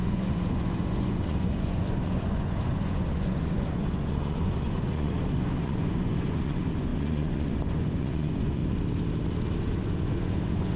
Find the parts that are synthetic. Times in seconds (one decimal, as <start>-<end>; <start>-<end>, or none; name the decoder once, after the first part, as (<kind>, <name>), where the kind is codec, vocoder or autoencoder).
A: 0.0-8.6 (vocoder, Vocos); 9.6-10.8